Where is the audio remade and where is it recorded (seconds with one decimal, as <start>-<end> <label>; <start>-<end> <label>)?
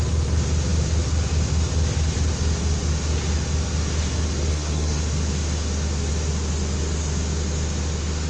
0.0-4.5 recorded; 4.5-5.0 remade; 5.0-8.3 recorded